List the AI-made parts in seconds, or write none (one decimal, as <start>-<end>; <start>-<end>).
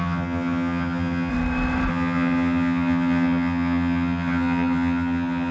0.0-1.3; 1.9-5.5